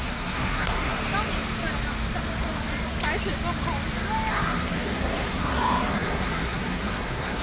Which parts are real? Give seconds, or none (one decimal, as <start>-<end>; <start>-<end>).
1.0-4.3